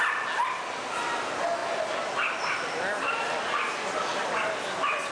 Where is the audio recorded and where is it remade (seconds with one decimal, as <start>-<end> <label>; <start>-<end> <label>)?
0.0-5.1 recorded